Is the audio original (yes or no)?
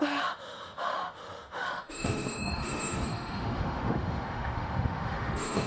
no